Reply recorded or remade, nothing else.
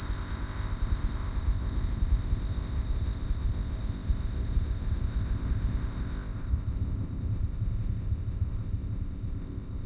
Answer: remade